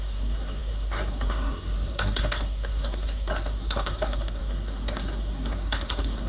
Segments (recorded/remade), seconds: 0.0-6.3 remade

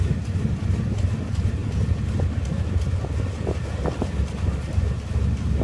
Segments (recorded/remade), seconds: 0.0-5.6 recorded

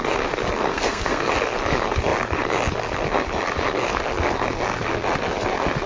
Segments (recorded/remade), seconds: 0.0-0.7 recorded; 0.7-1.3 remade; 1.3-5.9 recorded

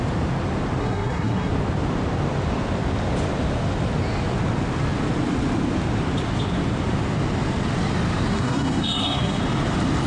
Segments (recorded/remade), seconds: 0.0-0.8 recorded; 0.8-1.5 remade; 1.5-8.3 recorded; 8.3-9.4 remade; 9.4-10.1 recorded

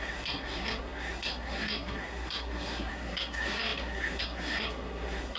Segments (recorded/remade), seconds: 0.0-5.4 remade

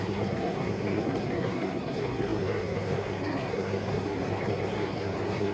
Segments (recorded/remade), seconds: 0.0-5.5 remade

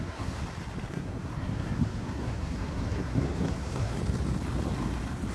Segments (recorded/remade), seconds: 0.0-0.4 remade; 0.4-0.9 recorded; 0.9-4.0 remade; 4.0-5.3 recorded

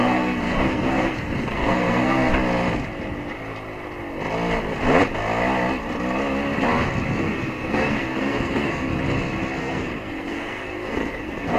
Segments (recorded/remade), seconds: 0.0-2.3 remade; 2.3-7.2 recorded; 7.2-8.9 remade; 8.9-9.6 recorded; 9.6-11.6 remade